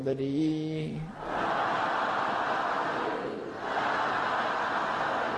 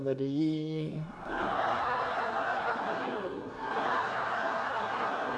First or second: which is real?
first